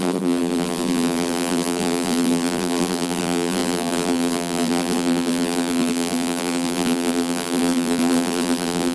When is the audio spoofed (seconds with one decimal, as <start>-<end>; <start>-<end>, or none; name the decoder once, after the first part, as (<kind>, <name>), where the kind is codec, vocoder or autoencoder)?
0.0-8.9 (vocoder, BigVGAN v2)